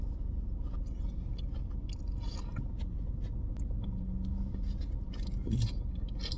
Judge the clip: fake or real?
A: real